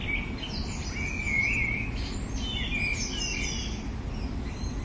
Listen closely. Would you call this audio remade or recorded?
recorded